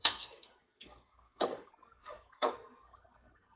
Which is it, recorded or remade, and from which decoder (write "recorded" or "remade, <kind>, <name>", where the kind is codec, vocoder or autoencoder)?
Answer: remade, codec, SNAC